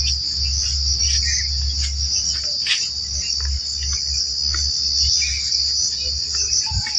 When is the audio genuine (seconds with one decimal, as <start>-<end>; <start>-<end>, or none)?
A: 0.0-7.0